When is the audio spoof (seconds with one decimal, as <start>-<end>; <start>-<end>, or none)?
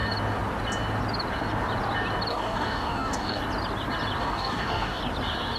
2.3-3.4; 4.2-5.0